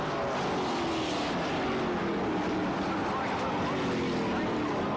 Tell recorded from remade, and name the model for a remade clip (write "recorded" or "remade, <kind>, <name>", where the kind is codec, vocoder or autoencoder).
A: recorded